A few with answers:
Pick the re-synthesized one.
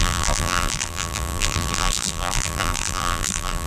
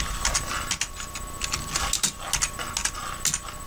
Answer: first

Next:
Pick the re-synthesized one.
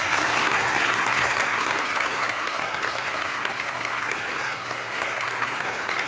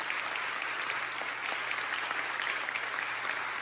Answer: first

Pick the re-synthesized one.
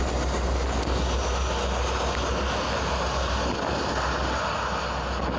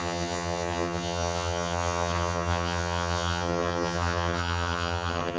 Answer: second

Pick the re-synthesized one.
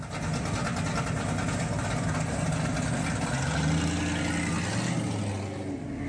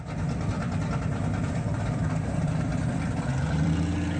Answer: second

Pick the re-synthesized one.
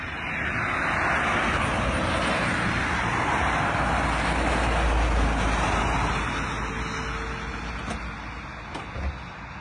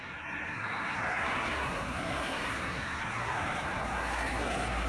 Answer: second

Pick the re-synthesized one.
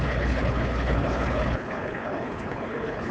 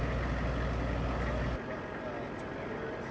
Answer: first